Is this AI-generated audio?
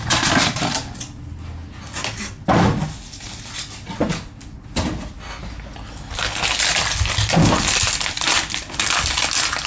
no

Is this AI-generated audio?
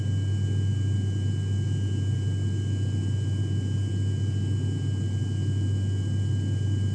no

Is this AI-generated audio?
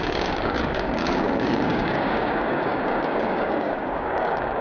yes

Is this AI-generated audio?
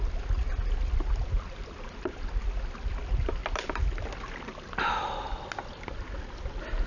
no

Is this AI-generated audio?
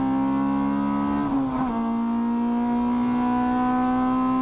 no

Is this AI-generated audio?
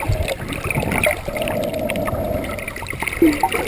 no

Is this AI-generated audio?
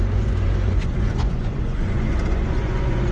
yes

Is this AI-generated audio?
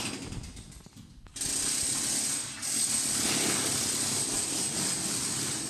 no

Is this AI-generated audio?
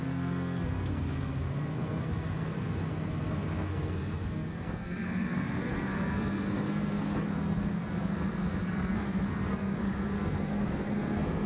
yes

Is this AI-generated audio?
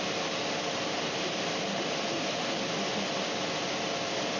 no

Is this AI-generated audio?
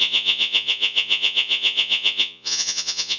yes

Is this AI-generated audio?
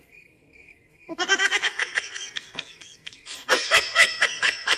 yes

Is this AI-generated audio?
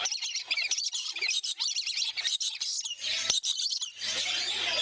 no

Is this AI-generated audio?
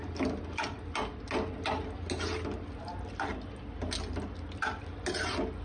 no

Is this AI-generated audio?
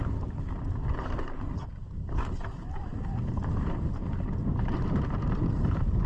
yes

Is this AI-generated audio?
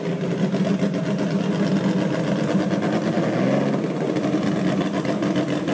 no